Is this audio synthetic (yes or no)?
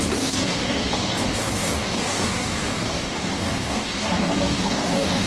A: yes